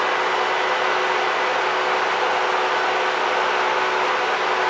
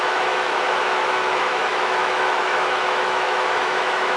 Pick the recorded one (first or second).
first